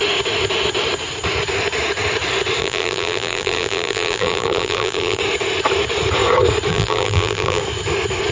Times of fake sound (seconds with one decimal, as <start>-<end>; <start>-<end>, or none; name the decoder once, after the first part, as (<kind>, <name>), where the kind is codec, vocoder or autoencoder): 2.6-5.2 (vocoder, BigVGAN v2); 6.7-7.6